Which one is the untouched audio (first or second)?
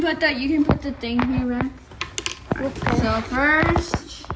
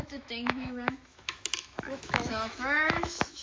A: first